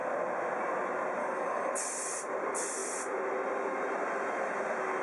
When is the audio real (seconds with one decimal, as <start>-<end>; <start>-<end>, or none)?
0.0-1.2; 1.7-5.0